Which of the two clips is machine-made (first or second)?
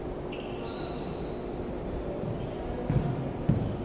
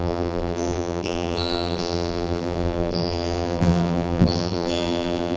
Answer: second